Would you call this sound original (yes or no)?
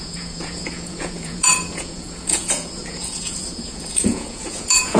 no